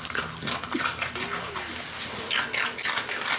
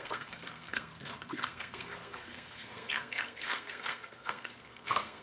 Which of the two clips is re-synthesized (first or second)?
second